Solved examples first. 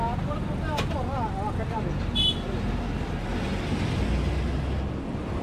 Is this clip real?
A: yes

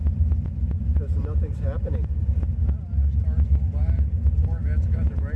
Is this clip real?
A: yes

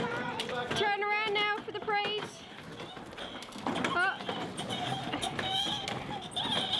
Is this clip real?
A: yes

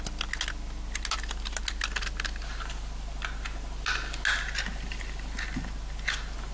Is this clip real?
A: yes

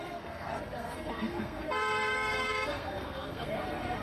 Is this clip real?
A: no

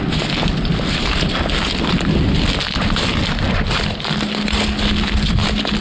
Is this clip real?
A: yes